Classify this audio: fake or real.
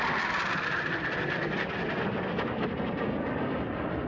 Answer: real